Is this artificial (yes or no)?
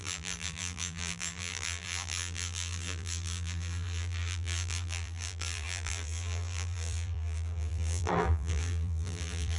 yes